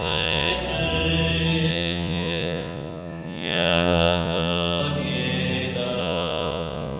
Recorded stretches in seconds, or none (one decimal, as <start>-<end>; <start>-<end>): 0.5-1.7; 4.8-6.0